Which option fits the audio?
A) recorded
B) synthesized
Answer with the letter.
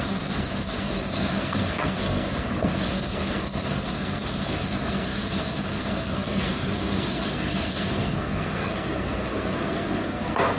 B